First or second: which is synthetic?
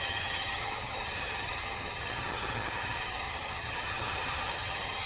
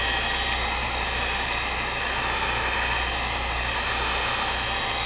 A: first